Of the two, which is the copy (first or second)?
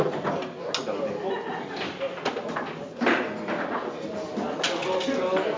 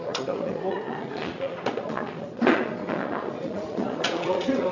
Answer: second